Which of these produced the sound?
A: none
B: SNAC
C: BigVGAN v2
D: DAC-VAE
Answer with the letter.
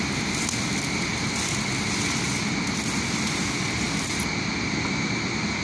A